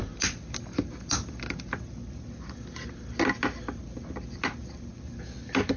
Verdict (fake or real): real